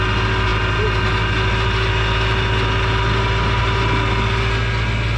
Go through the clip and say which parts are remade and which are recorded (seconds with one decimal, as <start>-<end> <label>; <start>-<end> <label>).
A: 0.0-5.2 recorded